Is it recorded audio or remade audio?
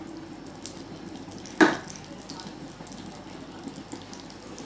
recorded